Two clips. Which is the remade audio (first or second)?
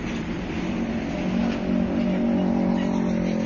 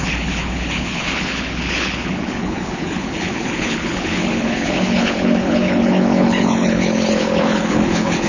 second